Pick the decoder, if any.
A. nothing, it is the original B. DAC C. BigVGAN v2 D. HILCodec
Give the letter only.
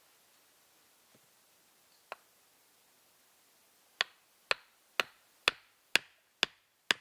A